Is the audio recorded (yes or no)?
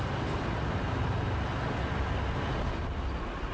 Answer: yes